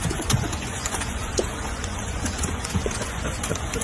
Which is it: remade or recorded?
remade